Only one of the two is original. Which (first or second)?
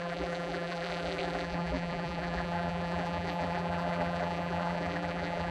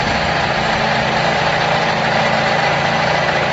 second